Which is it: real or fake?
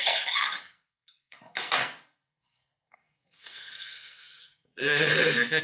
fake